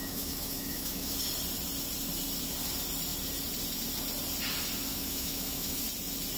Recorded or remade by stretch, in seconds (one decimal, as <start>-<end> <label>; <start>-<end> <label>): 0.0-1.2 remade; 1.2-4.9 recorded; 4.9-5.8 remade; 5.8-6.4 recorded